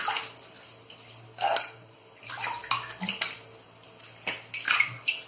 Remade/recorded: recorded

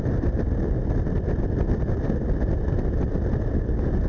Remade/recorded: recorded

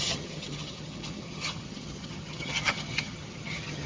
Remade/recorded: remade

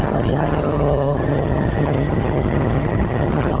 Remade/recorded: remade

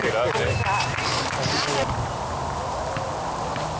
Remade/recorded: recorded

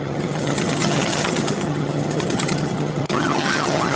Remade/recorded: remade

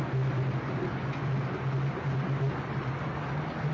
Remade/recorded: recorded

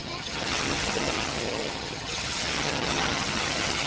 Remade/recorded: remade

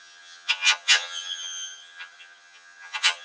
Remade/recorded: remade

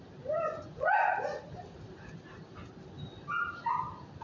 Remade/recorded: recorded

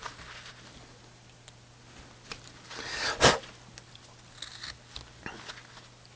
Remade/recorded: recorded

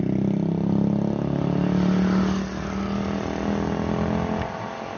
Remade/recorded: recorded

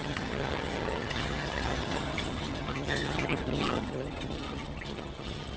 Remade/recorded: remade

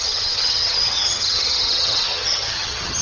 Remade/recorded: remade